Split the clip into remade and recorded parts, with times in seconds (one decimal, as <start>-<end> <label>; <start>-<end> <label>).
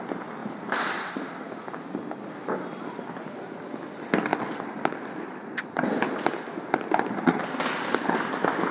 0.0-0.4 recorded; 0.4-1.1 remade; 1.1-8.7 recorded